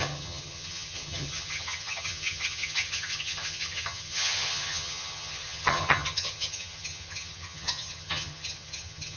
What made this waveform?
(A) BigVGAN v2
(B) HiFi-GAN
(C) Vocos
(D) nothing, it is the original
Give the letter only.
B